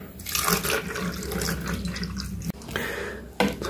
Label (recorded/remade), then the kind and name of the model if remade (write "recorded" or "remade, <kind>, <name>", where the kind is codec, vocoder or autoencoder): recorded